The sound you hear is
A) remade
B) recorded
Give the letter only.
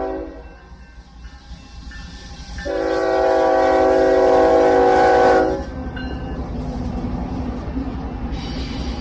B